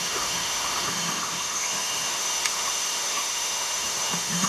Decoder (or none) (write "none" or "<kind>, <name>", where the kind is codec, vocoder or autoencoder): autoencoder, DAC-VAE